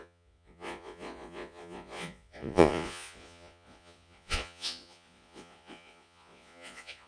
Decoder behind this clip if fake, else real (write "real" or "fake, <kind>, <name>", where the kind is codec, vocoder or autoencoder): fake, vocoder, Vocos